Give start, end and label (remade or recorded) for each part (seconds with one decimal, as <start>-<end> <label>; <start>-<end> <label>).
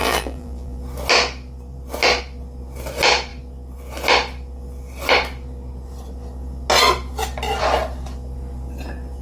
0.0-0.8 remade; 0.8-9.2 recorded